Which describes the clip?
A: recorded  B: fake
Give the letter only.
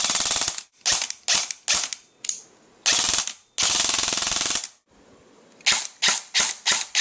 A